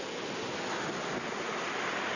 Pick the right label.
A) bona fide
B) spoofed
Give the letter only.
A